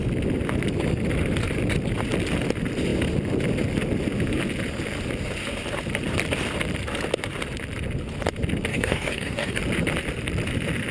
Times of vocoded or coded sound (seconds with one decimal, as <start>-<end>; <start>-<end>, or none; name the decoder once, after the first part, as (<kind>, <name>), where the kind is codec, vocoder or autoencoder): 8.7-9.6 (codec, DAC)